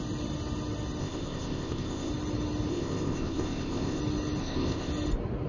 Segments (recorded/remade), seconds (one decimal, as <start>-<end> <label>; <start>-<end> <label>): 0.0-1.0 recorded; 1.0-2.1 remade; 2.1-2.7 recorded; 2.7-4.0 remade; 4.0-4.4 recorded; 4.4-4.9 remade; 4.9-5.5 recorded